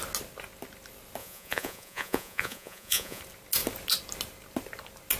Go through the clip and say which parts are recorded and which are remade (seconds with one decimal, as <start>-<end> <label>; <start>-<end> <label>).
0.0-1.2 recorded; 1.2-3.2 remade; 3.2-5.2 recorded